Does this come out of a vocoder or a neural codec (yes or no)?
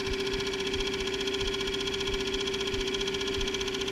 no